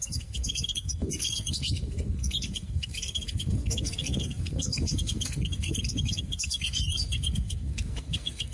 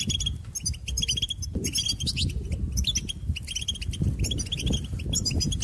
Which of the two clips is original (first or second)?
second